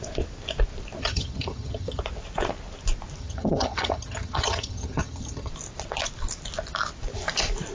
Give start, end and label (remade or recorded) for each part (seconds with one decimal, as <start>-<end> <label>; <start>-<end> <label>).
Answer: 0.0-1.0 recorded; 1.0-2.0 remade; 2.0-3.2 recorded; 3.2-5.5 remade; 5.5-7.7 recorded